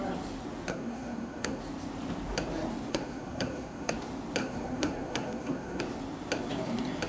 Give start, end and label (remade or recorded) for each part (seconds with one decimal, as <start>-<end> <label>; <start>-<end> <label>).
0.0-0.7 recorded; 0.7-1.6 remade; 1.6-2.9 recorded; 2.9-3.9 remade; 3.9-4.4 recorded; 4.4-5.8 remade; 5.8-7.1 recorded